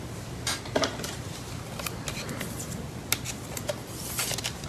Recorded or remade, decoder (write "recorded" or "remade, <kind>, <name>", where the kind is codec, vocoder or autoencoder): recorded